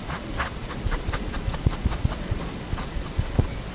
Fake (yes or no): yes